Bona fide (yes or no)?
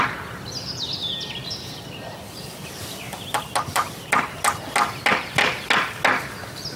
yes